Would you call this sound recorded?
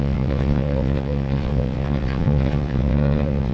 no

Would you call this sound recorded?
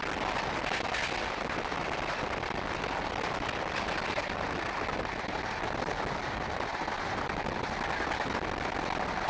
yes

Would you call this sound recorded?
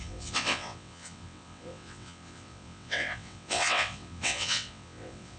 no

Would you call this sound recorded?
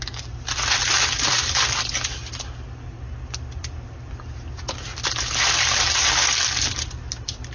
yes